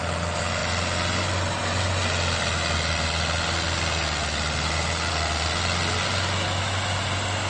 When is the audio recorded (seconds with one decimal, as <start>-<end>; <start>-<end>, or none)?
0.0-7.5